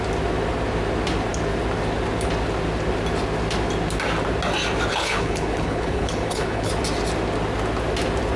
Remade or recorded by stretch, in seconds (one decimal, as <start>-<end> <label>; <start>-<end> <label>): 0.0-4.9 recorded; 4.9-6.7 remade; 6.7-8.4 recorded